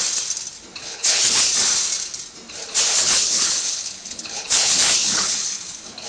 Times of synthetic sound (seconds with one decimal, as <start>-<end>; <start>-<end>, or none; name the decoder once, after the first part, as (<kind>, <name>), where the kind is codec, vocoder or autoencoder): 0.8-1.4 (codec, HILCodec); 2.9-6.1